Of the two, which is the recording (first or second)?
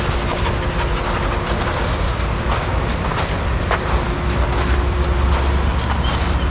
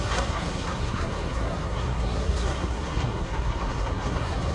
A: first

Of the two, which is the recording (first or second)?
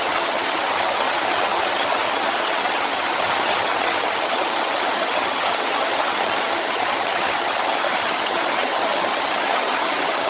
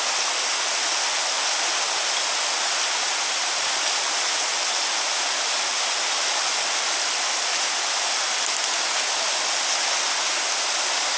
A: second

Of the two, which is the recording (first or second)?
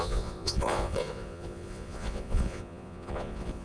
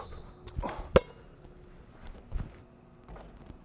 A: second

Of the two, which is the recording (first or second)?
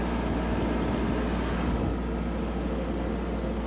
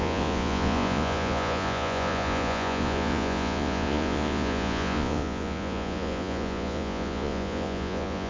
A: first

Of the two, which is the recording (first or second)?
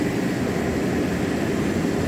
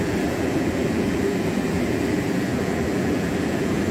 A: first